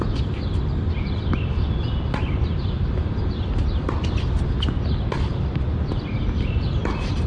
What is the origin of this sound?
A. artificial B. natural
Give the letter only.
B